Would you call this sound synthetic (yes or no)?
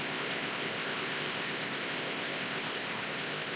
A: yes